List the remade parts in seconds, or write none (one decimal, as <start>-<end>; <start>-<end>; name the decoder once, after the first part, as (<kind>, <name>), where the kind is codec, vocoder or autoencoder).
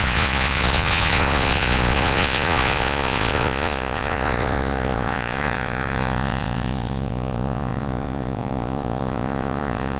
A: 0.0-10.0 (vocoder, Vocos)